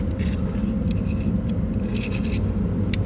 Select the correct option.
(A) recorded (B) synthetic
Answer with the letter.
A